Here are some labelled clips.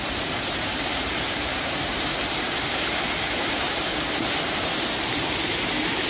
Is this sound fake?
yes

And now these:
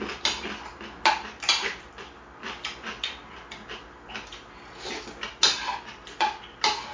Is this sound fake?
no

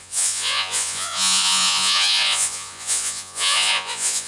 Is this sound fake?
yes